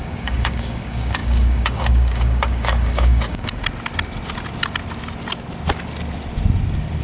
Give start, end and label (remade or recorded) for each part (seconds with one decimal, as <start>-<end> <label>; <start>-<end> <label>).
0.0-3.6 remade; 3.6-7.0 recorded